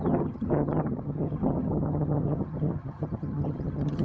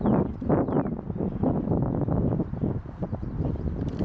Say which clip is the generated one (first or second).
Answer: first